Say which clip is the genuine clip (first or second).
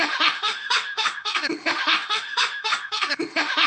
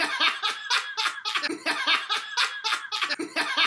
second